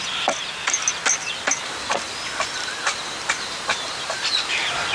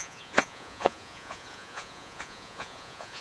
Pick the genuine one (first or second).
first